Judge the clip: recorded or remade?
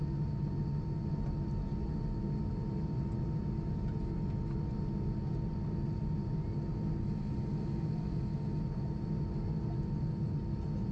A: recorded